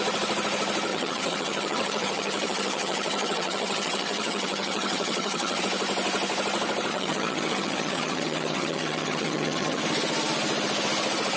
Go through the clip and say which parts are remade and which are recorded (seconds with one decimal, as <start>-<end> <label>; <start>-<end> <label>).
0.0-0.9 recorded; 0.9-5.6 remade; 5.6-6.9 recorded; 6.9-9.8 remade; 9.8-11.4 recorded